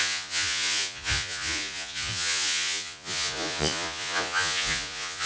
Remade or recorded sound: remade